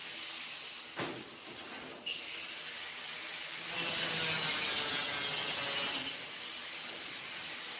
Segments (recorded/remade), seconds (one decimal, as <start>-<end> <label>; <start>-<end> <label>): 0.0-7.8 recorded